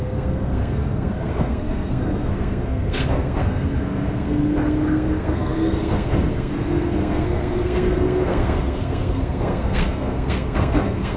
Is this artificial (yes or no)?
yes